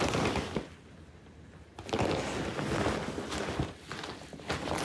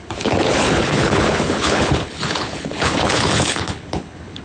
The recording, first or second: first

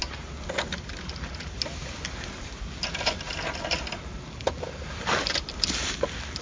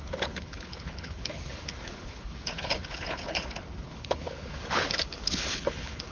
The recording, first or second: first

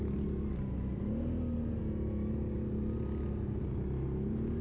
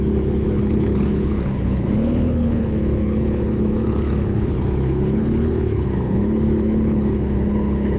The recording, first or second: first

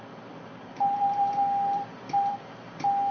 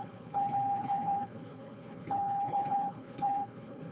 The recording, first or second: first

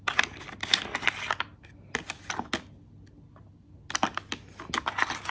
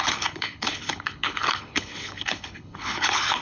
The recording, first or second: first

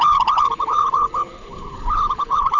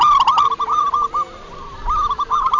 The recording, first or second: second